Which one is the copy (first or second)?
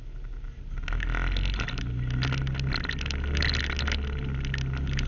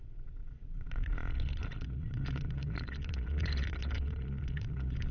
second